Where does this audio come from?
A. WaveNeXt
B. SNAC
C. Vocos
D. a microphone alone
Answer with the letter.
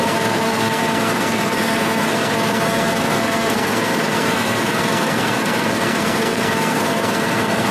B